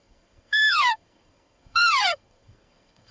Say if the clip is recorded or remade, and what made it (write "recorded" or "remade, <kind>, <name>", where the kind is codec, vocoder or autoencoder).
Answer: remade, codec, SNAC